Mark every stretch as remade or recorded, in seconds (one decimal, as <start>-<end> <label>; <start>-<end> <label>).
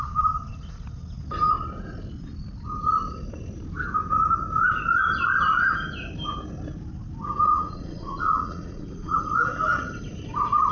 0.0-7.5 recorded; 7.5-9.2 remade; 9.2-10.7 recorded